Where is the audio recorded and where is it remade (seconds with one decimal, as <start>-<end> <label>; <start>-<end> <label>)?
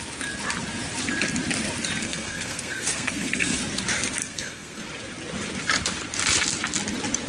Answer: 0.0-2.0 recorded; 2.0-3.6 remade; 3.6-4.2 recorded; 4.2-4.8 remade; 4.8-7.3 recorded